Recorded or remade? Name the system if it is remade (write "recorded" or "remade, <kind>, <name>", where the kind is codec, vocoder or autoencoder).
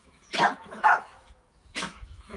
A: remade, autoencoder, DAC-VAE